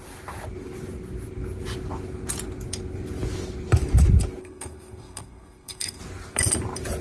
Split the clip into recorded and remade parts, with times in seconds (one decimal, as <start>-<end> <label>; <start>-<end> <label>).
0.0-4.4 recorded; 4.4-6.0 remade; 6.0-7.0 recorded